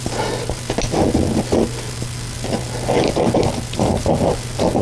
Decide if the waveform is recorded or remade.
recorded